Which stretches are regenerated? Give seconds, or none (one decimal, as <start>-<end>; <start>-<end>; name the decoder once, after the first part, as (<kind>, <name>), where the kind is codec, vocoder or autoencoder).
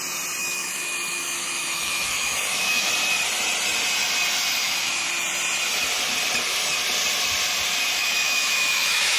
0.4-2.9 (autoencoder, DAC-VAE); 4.6-5.1; 8.0-9.2